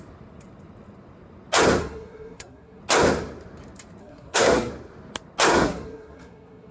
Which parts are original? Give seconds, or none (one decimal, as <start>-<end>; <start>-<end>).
0.0-1.8; 2.8-4.0; 4.7-5.5